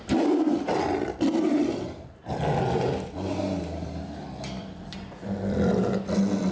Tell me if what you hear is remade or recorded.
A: recorded